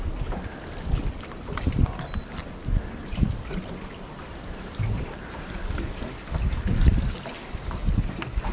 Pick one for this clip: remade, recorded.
recorded